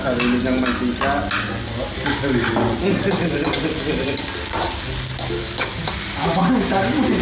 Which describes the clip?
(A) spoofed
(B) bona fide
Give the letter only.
B